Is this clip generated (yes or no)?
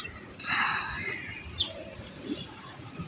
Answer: yes